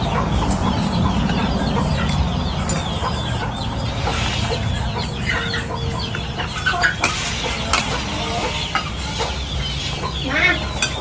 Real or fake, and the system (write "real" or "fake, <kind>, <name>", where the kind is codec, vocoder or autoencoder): real